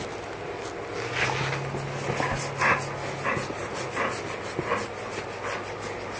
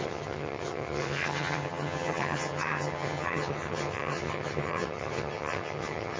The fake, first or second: second